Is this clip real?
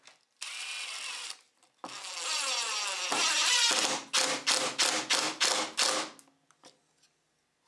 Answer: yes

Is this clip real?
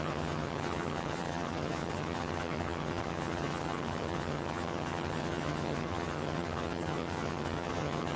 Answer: no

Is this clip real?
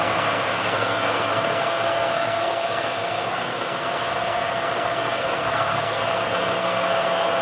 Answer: no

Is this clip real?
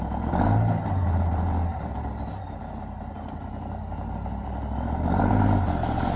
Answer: yes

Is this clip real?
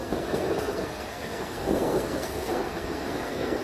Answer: no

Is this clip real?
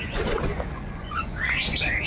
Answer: no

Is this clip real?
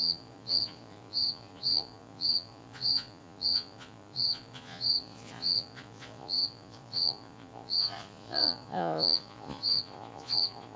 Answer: no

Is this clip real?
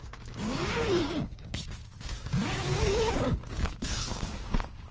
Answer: no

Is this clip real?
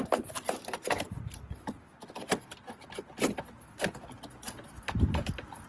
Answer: yes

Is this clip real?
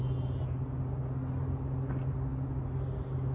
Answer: yes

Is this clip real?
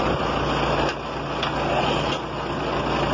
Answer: yes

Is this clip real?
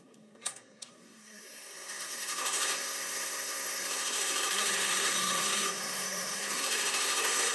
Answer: no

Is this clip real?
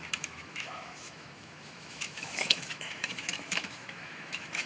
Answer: no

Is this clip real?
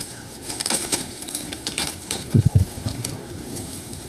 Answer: no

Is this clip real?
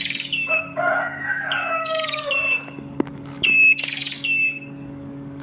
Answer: no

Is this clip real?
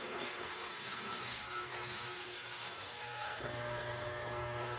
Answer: no